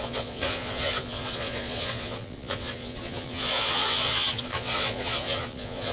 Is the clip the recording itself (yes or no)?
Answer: no